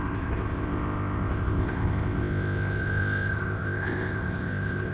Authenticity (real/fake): fake